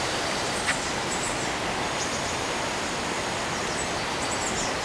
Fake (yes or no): yes